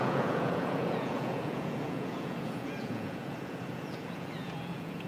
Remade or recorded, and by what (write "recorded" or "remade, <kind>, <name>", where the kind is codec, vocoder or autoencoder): remade, vocoder, Vocos